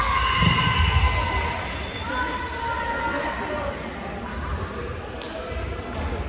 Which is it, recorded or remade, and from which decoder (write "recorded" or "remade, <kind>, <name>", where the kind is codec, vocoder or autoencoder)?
recorded